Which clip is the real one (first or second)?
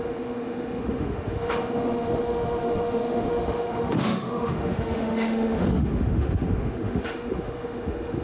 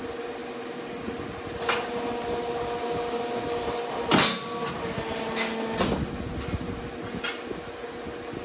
second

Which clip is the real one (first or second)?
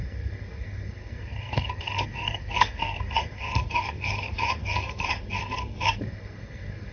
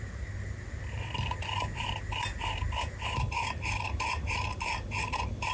second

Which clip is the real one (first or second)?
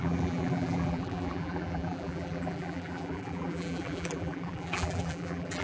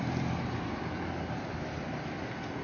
second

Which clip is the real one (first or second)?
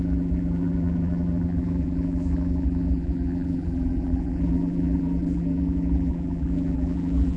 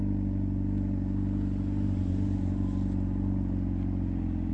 second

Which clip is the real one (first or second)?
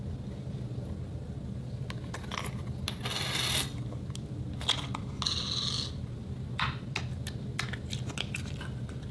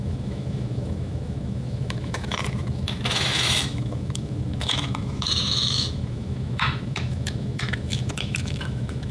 first